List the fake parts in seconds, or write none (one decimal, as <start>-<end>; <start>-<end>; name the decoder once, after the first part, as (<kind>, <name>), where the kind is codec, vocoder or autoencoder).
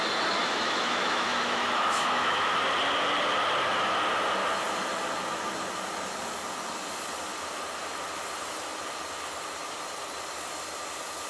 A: 0.4-2.6 (autoencoder, DAC-VAE)